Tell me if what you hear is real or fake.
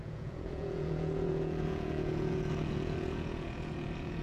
fake